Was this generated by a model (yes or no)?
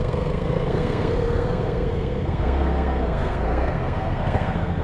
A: yes